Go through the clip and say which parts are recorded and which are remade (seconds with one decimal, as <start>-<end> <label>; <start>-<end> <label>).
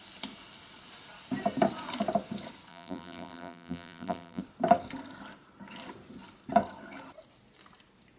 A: 0.0-2.7 recorded; 2.7-4.4 remade; 4.4-8.2 recorded